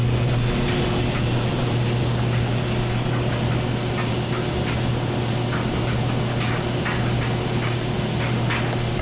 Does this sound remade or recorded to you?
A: recorded